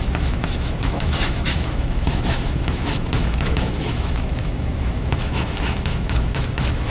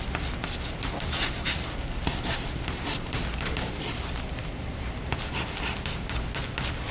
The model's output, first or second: first